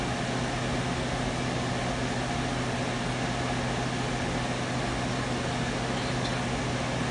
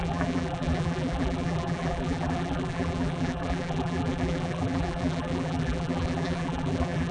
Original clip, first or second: first